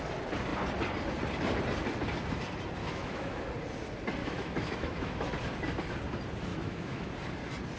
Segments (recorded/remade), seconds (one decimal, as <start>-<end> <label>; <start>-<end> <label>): 0.0-2.8 recorded; 2.8-3.4 remade; 3.4-4.2 recorded; 4.2-5.3 remade; 5.3-6.5 recorded; 6.5-7.1 remade; 7.1-7.8 recorded